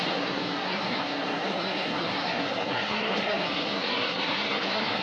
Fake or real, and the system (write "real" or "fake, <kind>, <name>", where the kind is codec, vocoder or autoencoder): fake, codec, SNAC